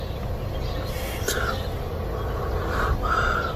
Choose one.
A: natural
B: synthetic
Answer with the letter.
A